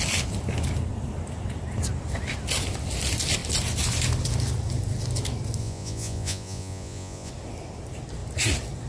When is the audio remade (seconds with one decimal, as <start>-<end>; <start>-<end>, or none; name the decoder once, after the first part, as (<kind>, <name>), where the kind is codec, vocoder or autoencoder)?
5.6-7.3 (vocoder, Vocos)